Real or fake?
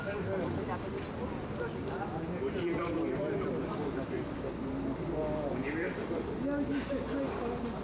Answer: real